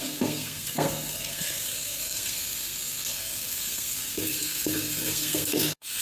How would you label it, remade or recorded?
remade